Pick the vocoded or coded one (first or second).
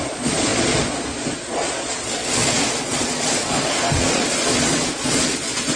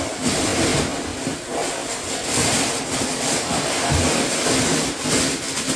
first